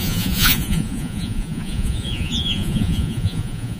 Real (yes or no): no